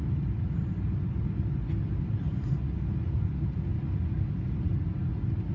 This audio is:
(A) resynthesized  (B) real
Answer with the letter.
B